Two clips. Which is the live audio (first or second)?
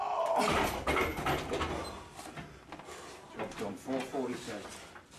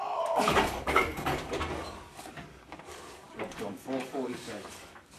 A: first